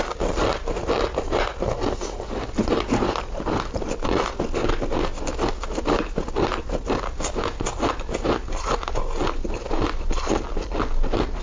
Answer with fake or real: real